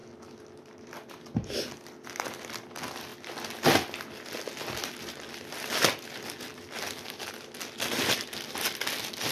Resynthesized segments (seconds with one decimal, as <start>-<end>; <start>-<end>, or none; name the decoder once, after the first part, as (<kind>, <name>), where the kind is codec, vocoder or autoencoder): none